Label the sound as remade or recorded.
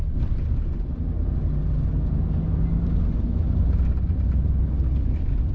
recorded